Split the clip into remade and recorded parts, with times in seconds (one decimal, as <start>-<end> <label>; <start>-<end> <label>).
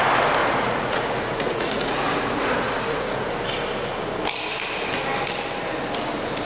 0.0-0.4 recorded; 0.4-3.3 remade; 3.3-6.4 recorded